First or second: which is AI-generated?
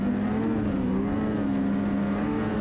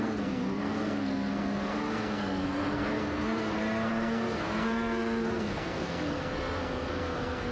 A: second